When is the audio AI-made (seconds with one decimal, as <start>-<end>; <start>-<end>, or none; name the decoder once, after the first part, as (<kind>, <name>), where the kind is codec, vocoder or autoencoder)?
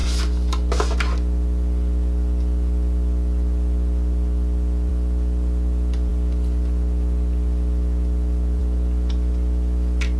none